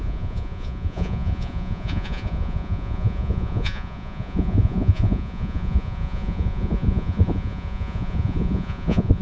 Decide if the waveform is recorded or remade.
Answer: remade